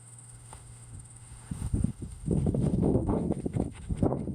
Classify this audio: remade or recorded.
remade